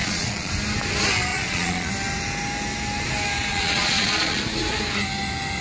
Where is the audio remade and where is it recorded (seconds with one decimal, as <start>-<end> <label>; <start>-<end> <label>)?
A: 0.0-0.5 remade; 0.5-1.3 recorded; 1.3-1.9 remade; 1.9-3.5 recorded; 3.5-4.4 remade; 4.4-5.6 recorded